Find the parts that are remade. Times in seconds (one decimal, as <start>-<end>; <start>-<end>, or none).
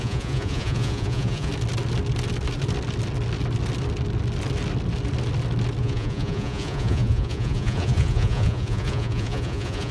0.0-1.5; 5.8-9.9